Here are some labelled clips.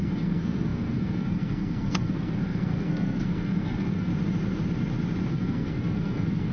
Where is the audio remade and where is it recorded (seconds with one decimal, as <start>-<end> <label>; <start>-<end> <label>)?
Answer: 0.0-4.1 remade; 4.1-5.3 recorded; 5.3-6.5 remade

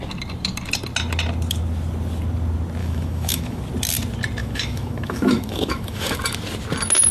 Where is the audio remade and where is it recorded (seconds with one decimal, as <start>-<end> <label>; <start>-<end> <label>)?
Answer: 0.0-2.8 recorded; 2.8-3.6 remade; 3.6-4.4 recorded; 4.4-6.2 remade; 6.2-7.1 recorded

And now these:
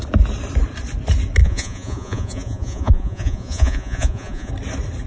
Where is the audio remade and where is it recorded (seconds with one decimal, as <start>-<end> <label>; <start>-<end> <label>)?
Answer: 0.0-1.4 recorded; 1.4-4.5 remade; 4.5-5.1 recorded

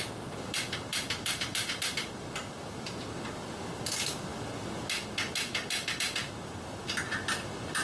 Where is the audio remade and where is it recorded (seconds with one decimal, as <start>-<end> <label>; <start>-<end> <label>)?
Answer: 0.0-7.8 recorded

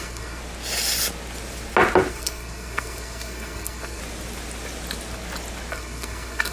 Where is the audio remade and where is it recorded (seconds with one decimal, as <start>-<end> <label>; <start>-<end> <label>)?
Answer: 0.0-0.4 remade; 0.4-2.1 recorded; 2.1-4.0 remade; 4.0-5.7 recorded; 5.7-6.5 remade

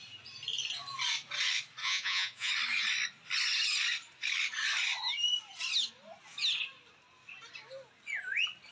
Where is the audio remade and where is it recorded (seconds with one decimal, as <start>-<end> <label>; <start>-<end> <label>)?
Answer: 0.0-1.8 recorded; 1.8-2.5 remade; 2.5-8.7 recorded